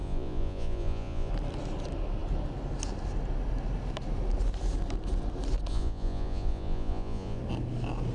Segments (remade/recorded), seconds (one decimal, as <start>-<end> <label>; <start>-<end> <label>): 0.0-1.3 remade; 1.3-5.7 recorded; 5.7-7.4 remade; 7.4-8.1 recorded